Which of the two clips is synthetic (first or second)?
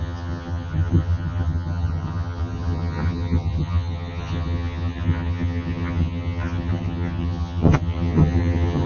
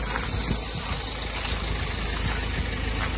first